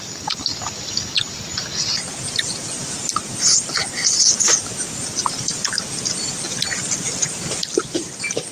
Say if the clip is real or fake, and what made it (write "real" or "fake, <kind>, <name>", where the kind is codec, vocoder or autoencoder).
real